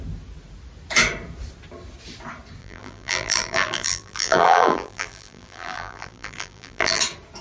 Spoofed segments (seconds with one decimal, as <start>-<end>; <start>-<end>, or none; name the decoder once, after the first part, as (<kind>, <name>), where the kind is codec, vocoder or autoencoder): 2.6-7.0 (vocoder, BigVGAN v2)